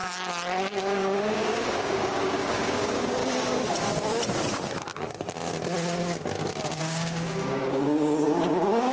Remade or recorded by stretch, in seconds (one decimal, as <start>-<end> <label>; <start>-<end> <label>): 0.0-1.0 recorded; 1.0-3.2 remade; 3.2-6.8 recorded; 6.8-8.9 remade